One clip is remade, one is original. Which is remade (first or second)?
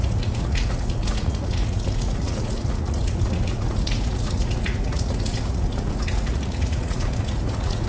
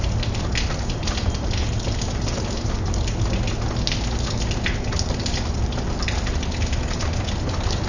first